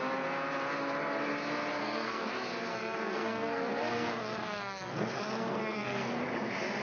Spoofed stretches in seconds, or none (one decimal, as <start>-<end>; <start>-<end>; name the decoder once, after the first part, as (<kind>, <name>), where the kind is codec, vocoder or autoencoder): 1.8-2.3 (codec, SNAC); 2.7-6.1